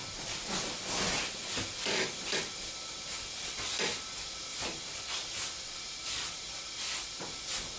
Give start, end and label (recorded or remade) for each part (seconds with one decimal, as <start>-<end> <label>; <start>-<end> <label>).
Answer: 0.0-7.8 recorded